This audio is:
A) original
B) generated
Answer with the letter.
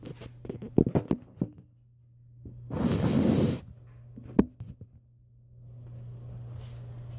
A